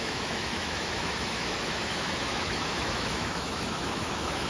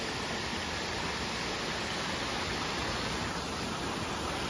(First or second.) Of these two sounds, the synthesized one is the first